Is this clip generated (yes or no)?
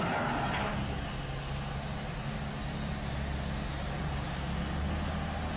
no